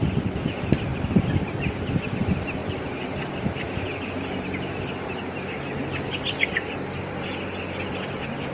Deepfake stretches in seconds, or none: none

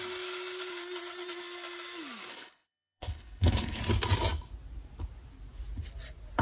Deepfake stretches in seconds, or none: 2.3-3.8 (codec, HILCodec)

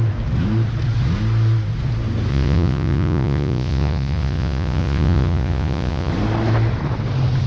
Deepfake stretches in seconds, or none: 2.3-6.1 (vocoder, Vocos)

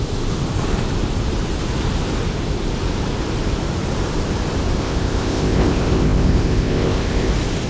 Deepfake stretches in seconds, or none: 4.8-7.3 (codec, ZipCodec)

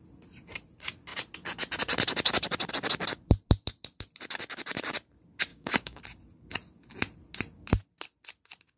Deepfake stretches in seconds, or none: 5.5-6.0 (codec, DAC)

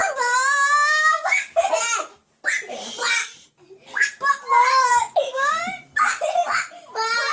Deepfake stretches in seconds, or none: 0.0-1.8 (codec, DAC); 4.9-5.6